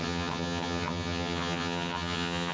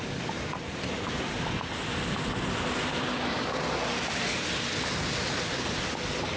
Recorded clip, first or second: second